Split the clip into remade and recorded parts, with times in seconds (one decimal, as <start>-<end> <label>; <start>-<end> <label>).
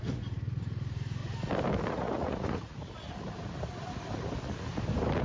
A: 0.0-1.2 remade; 1.2-1.9 recorded; 1.9-2.7 remade; 2.7-5.2 recorded